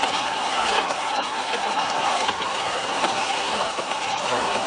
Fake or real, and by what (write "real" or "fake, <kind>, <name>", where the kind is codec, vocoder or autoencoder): fake, codec, SNAC